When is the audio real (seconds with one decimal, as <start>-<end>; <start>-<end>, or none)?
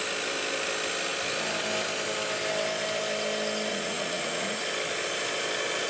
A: 0.0-3.7; 4.6-5.9